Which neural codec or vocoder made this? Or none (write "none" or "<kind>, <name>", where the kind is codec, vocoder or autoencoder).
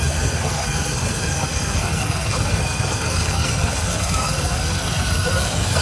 codec, SNAC